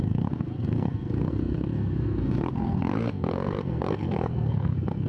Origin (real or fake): fake